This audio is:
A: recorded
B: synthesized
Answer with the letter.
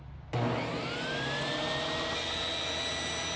A